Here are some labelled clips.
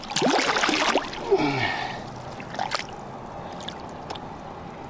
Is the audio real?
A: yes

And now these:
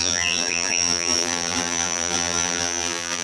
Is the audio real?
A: no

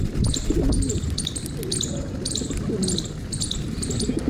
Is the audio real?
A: yes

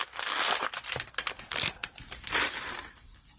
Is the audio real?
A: yes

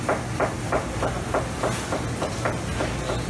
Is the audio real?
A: yes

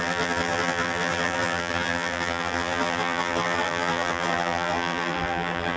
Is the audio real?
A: no